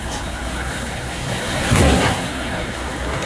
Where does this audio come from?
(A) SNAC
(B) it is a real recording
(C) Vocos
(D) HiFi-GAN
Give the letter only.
A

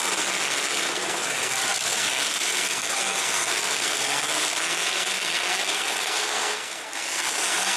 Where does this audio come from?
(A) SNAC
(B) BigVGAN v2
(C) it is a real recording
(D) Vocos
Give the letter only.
A